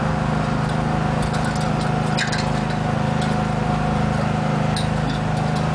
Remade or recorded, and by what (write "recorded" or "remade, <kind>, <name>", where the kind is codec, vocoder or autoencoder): recorded